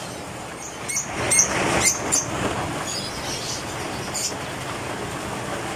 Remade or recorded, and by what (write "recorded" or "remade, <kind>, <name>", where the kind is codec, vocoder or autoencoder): recorded